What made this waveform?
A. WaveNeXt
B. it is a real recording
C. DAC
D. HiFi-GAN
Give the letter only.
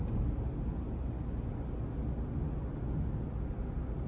B